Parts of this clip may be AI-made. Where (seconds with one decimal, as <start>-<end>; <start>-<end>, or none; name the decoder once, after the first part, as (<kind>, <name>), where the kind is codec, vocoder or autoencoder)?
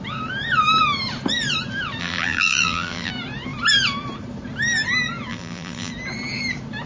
2.0-3.1 (vocoder, BigVGAN v2); 5.3-5.9